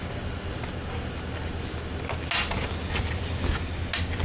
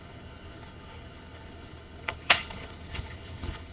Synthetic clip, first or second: second